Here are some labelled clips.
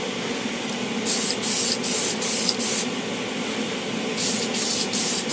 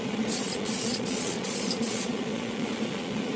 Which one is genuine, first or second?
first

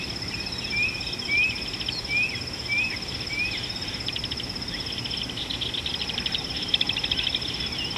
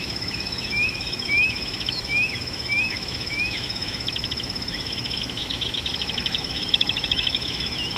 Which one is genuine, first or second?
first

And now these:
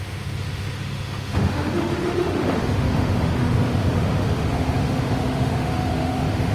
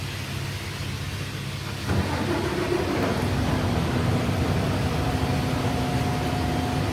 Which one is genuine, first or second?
second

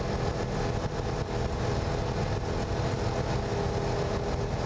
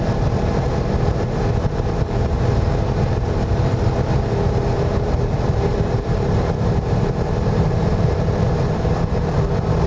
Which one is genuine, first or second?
first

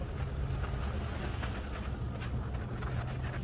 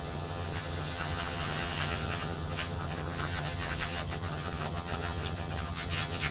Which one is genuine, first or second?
first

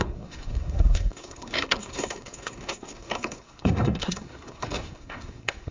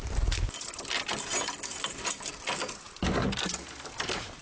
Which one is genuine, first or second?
second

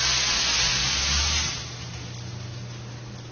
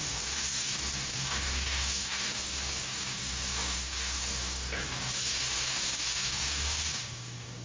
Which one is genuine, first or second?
first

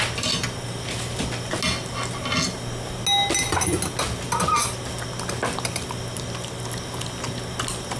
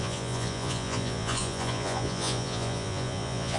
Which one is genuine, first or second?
first